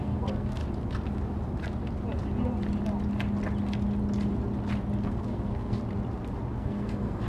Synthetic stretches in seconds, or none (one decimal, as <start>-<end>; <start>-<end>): 0.0-0.6; 5.0-5.8; 6.5-7.3